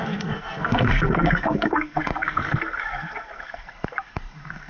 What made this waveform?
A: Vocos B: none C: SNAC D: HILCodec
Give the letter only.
C